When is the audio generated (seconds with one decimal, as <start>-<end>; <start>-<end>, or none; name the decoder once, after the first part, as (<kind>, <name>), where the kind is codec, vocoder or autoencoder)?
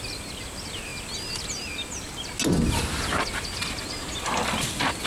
none